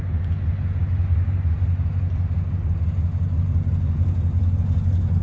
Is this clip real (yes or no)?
yes